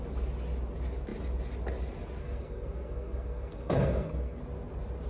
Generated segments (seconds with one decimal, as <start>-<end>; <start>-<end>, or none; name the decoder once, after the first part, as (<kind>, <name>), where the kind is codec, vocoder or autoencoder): 2.2-4.4 (codec, SNAC)